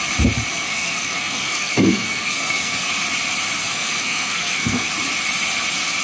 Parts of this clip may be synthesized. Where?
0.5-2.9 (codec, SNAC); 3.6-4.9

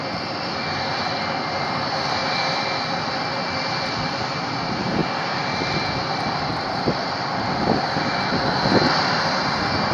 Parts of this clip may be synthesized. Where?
0.0-9.9 (vocoder, BigVGAN v2)

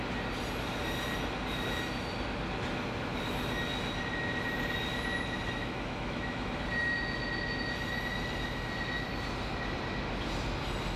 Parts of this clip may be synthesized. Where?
5.6-6.6 (autoencoder, DAC-VAE)

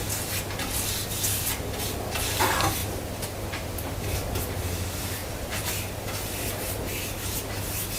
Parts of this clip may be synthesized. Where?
none

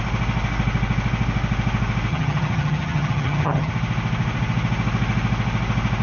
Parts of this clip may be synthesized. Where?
2.1-3.7 (vocoder, HiFi-GAN)

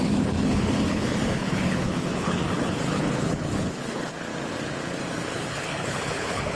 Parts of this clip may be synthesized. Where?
0.0-4.3 (codec, HILCodec); 5.3-6.6

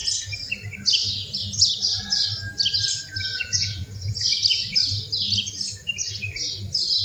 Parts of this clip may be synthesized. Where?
3.3-4.1 (vocoder, Vocos)

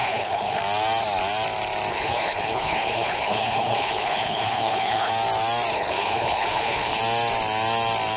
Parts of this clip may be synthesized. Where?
0.0-0.6 (codec, HILCodec); 1.9-5.1; 5.7-7.0